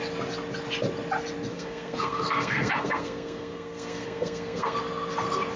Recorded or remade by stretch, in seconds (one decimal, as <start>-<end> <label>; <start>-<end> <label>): 0.0-1.5 recorded; 1.5-4.8 remade; 4.8-5.6 recorded